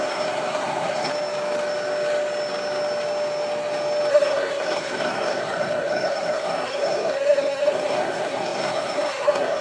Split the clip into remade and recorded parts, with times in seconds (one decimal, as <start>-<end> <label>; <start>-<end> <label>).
0.0-1.1 remade; 1.1-4.1 recorded; 4.1-9.6 remade